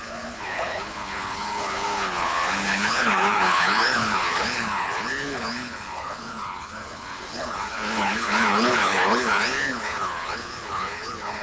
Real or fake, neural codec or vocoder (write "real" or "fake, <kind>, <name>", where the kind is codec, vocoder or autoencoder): fake, codec, HILCodec